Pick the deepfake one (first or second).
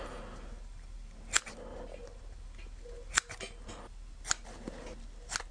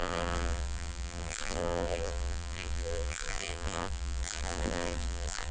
second